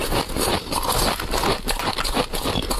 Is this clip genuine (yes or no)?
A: yes